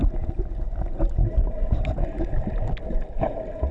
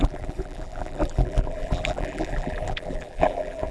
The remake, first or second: second